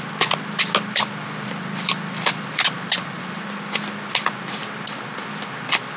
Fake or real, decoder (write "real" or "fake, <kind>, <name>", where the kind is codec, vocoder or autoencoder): real